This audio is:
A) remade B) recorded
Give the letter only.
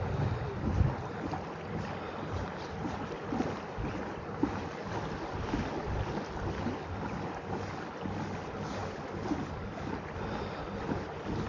B